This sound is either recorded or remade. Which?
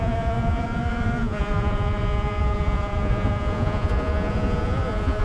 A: remade